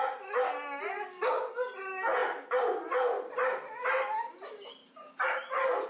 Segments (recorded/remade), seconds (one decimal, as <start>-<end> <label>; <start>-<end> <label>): 0.0-5.9 recorded